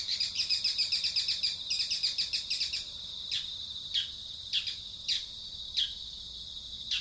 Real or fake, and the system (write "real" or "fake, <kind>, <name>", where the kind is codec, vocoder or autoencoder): real